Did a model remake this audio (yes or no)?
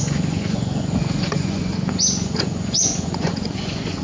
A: yes